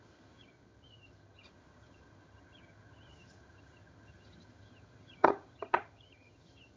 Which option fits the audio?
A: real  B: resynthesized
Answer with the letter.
B